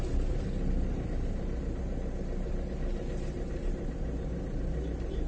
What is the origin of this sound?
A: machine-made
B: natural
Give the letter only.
B